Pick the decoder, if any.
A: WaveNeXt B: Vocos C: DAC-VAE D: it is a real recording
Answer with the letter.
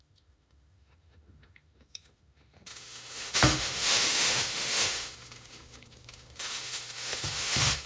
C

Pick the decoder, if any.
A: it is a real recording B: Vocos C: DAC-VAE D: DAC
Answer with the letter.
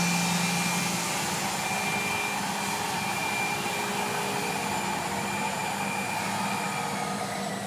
A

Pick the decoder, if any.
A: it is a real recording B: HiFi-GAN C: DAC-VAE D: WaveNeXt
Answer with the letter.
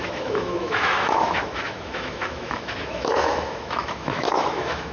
C